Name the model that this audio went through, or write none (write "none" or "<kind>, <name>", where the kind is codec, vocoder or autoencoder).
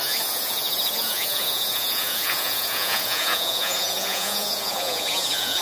vocoder, Vocos